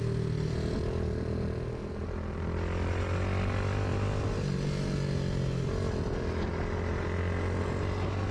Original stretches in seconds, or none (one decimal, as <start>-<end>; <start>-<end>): 0.0-8.3